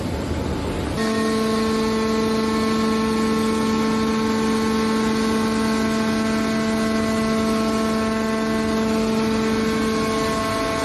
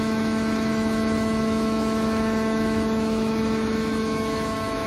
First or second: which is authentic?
first